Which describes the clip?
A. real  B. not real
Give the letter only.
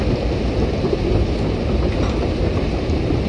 A